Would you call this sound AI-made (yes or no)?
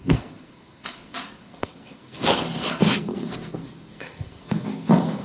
yes